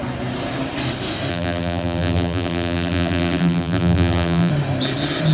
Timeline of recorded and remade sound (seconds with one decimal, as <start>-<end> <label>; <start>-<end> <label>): 0.0-1.3 recorded; 1.3-4.5 remade; 4.5-5.3 recorded

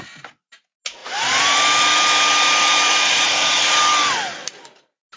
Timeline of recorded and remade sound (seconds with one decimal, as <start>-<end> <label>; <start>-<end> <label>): 0.0-1.0 recorded; 1.0-3.2 remade; 3.2-5.2 recorded

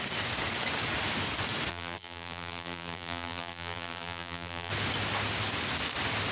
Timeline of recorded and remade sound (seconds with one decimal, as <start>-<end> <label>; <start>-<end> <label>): 0.0-1.7 recorded; 1.7-4.7 remade; 4.7-6.3 recorded

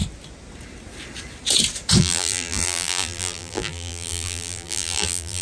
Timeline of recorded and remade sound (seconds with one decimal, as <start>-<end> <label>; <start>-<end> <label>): 0.0-2.0 recorded; 2.0-5.4 remade

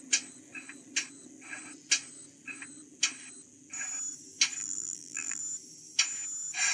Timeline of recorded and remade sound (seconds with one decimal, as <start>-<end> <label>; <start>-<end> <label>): 0.0-4.6 recorded; 4.6-5.4 remade; 5.4-6.7 recorded